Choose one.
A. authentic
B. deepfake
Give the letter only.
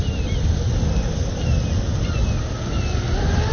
A